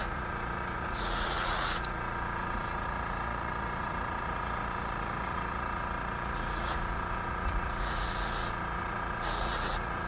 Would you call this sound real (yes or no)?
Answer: no